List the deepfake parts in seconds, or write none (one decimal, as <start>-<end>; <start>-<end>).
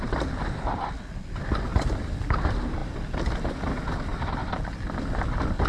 none